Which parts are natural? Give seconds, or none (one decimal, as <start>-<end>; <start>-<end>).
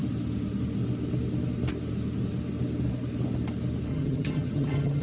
0.0-3.9